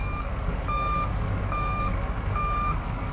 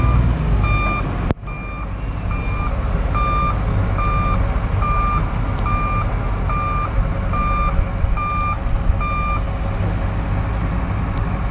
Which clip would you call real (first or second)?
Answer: second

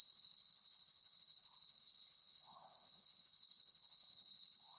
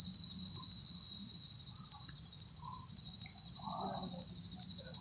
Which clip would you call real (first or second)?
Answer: second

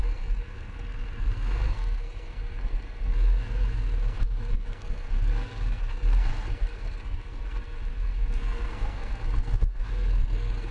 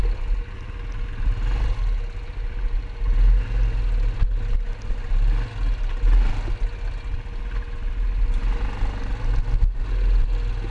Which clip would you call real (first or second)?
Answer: second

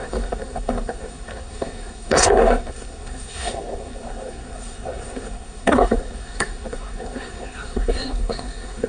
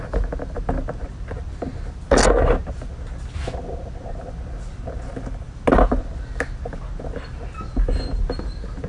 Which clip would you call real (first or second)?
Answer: second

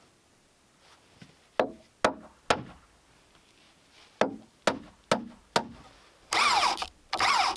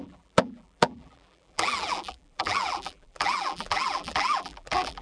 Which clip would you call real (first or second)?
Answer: first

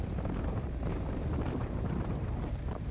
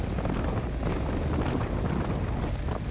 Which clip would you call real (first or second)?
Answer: second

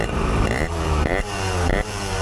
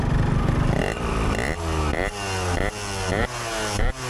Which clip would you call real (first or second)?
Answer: second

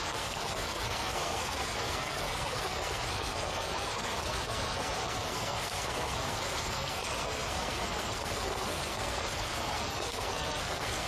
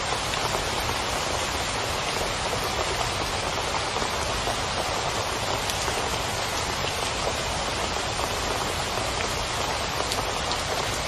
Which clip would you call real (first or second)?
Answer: second